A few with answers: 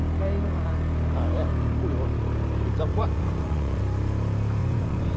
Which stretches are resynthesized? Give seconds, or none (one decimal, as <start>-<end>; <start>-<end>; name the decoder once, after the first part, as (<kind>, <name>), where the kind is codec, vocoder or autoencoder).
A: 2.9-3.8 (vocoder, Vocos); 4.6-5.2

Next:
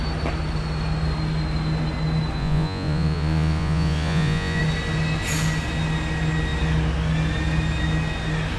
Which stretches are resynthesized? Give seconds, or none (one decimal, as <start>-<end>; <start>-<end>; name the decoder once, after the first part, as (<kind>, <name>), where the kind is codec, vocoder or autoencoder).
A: 2.4-4.6 (vocoder, Vocos)

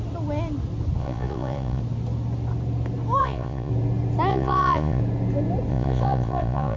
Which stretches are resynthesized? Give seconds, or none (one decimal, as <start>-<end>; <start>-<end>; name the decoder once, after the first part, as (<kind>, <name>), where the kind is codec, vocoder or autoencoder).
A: 1.0-1.8 (vocoder, Vocos); 3.2-3.7; 4.3-5.0; 5.7-6.8

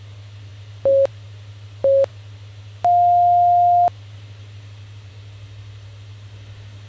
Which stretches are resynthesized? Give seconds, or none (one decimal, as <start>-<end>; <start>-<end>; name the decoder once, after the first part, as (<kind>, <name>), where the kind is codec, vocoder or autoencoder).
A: none

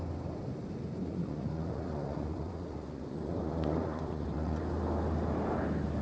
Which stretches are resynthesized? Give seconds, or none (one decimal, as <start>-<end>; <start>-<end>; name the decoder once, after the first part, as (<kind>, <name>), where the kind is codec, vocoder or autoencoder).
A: 1.0-4.6 (vocoder, Vocos)

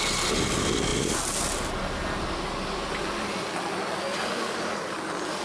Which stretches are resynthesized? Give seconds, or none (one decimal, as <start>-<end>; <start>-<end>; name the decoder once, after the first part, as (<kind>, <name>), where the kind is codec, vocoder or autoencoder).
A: none

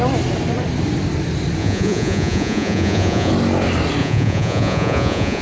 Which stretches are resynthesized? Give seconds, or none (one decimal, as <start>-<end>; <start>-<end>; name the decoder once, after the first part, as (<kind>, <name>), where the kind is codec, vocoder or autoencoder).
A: 1.6-3.3 (vocoder, Vocos); 4.0-5.4

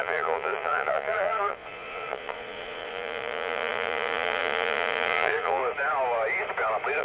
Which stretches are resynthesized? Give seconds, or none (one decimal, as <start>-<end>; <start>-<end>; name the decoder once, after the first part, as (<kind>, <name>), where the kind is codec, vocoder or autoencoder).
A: 0.0-5.6 (vocoder, Vocos)